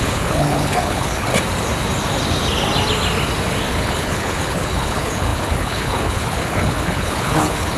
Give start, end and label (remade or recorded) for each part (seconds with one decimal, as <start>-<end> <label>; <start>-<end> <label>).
0.0-1.3 remade; 1.3-3.7 recorded; 3.7-7.8 remade